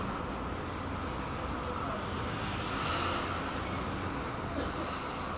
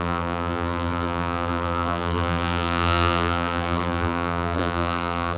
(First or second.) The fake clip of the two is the second